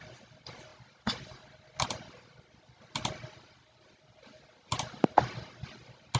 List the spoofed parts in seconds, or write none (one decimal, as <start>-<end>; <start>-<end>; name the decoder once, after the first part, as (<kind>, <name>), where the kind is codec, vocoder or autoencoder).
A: none